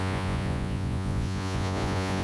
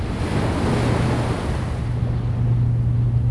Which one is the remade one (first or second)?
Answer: first